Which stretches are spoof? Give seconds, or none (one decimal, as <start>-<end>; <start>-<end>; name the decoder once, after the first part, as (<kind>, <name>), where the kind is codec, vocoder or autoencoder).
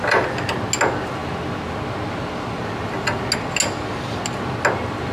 none